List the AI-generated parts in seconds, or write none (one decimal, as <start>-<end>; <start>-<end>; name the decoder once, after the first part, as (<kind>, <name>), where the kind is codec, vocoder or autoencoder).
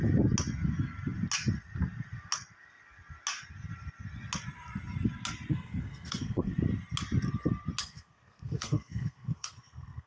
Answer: 5.5-6.5 (codec, SNAC); 7.8-10.1